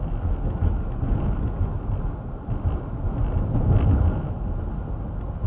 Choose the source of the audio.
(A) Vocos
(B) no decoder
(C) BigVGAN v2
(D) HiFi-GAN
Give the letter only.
B